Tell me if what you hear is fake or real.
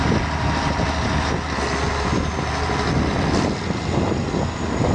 real